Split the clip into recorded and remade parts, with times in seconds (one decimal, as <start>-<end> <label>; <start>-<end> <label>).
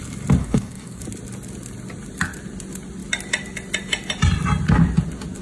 0.0-0.4 recorded; 0.4-1.0 remade; 1.0-5.4 recorded